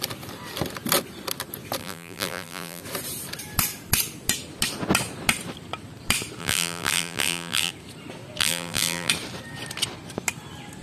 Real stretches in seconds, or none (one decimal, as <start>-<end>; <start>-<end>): 0.0-1.8; 2.8-6.4; 7.7-8.4; 9.1-10.8